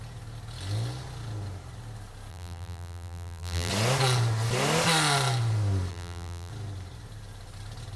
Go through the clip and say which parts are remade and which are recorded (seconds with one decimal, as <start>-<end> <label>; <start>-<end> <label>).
0.0-2.3 recorded; 2.3-3.7 remade; 3.7-5.9 recorded; 5.9-6.5 remade; 6.5-8.0 recorded